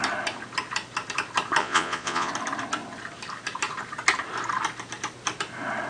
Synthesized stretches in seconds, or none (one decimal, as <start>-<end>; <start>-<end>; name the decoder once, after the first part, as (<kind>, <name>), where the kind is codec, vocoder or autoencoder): 1.6-2.3 (vocoder, Vocos)